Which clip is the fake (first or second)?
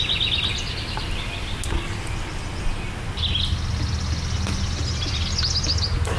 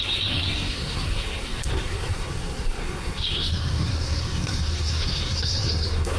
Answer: second